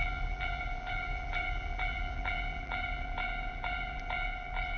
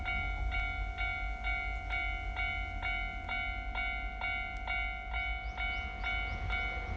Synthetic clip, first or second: first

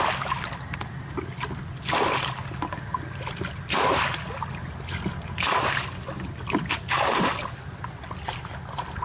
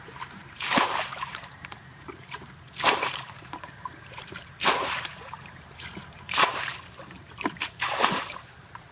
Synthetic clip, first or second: second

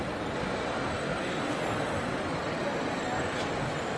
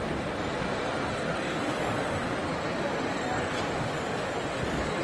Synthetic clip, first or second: second